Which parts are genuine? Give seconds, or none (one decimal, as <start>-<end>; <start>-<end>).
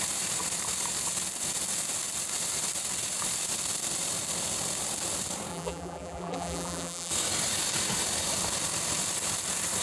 0.0-5.5; 7.1-9.8